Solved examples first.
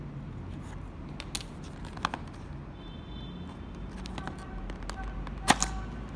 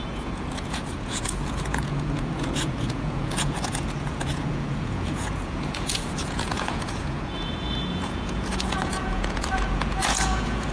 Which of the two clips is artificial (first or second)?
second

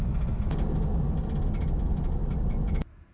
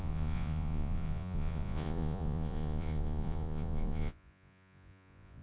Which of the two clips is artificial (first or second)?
second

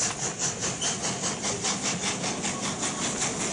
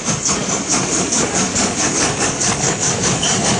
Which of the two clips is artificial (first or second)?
second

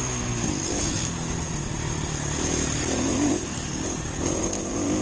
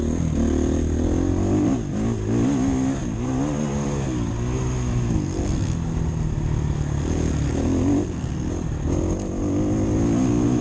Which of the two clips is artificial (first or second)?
first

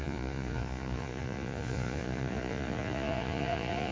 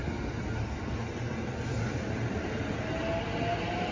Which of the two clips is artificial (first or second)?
first